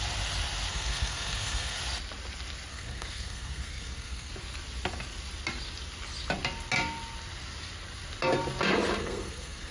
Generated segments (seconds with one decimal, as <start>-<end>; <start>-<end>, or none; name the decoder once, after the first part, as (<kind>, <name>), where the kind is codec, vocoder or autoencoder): 0.7-1.8 (codec, SNAC); 2.7-4.3; 9.0-9.7